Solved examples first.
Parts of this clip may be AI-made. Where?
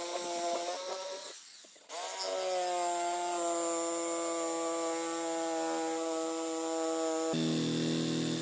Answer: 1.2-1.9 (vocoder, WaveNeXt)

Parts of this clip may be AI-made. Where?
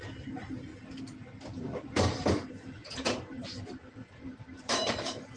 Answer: 0.0-0.7 (vocoder, BigVGAN v2); 1.4-5.4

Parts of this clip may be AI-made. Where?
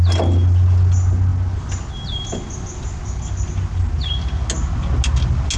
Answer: none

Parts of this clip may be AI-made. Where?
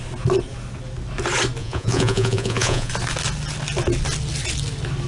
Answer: 1.6-2.9 (vocoder, Vocos)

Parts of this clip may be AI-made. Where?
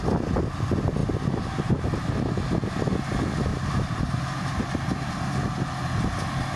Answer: 1.0-1.8 (vocoder, BigVGAN v2); 3.5-5.4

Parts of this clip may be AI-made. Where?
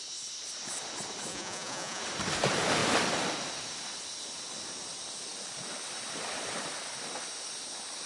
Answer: 1.3-2.0 (vocoder, Vocos)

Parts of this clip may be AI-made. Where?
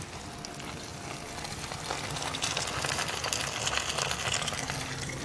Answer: none